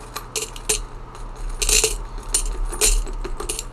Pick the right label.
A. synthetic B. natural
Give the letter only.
B